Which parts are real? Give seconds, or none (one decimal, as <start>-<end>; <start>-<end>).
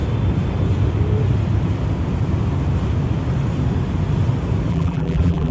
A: 0.0-4.7